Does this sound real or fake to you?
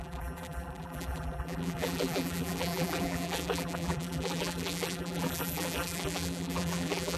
fake